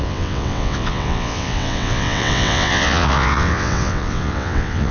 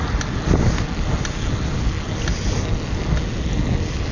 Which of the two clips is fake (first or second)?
first